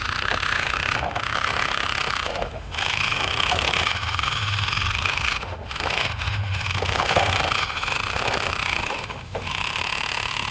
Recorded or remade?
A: remade